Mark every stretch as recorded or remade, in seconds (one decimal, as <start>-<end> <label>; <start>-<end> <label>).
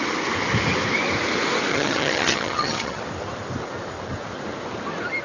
0.0-1.7 recorded; 1.7-3.0 remade; 3.0-5.2 recorded